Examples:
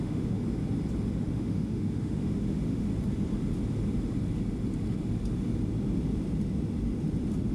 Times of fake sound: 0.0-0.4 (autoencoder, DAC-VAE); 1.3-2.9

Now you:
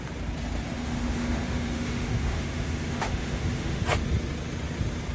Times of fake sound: 0.7-3.8 (autoencoder, DAC-VAE)

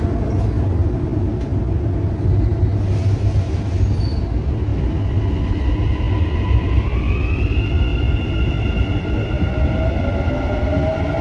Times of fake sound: none

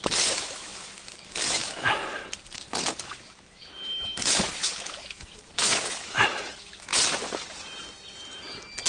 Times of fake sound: 0.0-2.2 (autoencoder, DAC-VAE); 3.0-6.9

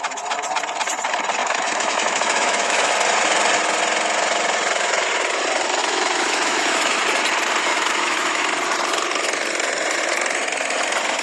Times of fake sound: 1.4-2.9 (autoencoder, DAC-VAE); 5.8-7.0; 7.7-8.4